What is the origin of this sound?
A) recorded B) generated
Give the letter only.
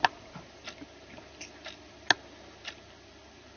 A